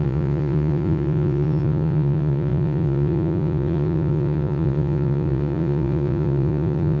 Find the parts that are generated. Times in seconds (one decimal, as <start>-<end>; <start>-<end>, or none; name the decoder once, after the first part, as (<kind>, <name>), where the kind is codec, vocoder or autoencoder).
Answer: 0.0-7.0 (vocoder, Vocos)